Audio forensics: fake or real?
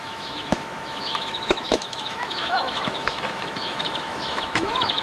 fake